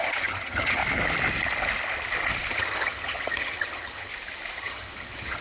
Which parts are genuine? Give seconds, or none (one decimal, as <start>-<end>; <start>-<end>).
0.8-2.5; 4.1-4.6